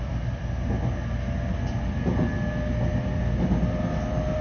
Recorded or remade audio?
recorded